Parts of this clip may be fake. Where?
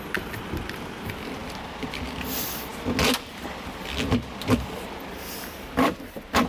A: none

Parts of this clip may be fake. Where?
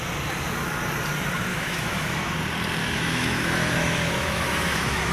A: 1.5-2.3; 2.8-5.1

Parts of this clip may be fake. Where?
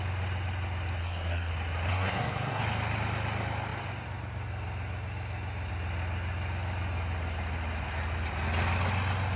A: 1.0-1.5; 1.9-2.6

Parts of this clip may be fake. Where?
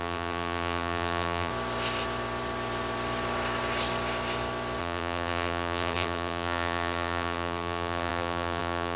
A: 0.0-1.5; 4.8-9.0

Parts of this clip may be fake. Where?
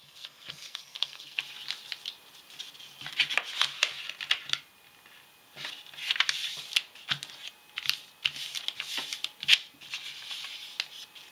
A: 0.0-1.4